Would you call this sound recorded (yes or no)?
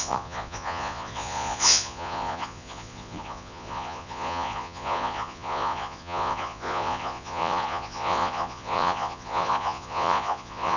no